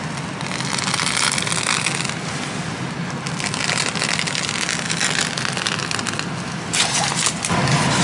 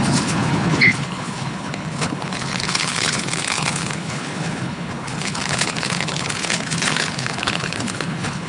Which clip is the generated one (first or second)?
second